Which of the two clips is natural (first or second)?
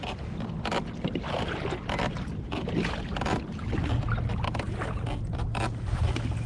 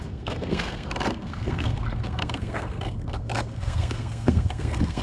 first